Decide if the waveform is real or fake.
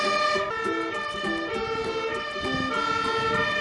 real